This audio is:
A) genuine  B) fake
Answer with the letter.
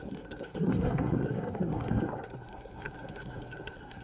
B